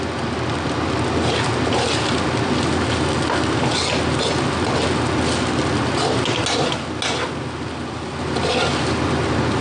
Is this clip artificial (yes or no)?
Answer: no